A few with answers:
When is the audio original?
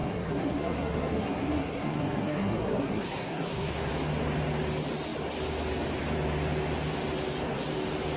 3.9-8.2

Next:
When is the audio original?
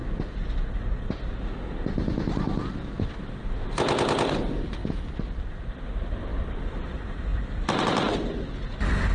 0.0-9.1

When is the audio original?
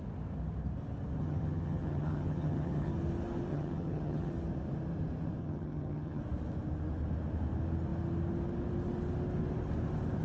0.0-1.2; 2.9-3.5; 4.3-5.4; 6.2-10.2